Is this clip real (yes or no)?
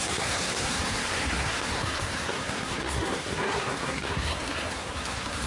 no